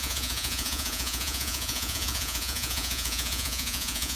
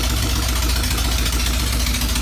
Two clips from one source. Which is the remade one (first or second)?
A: first